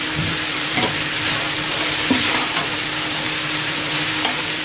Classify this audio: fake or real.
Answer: fake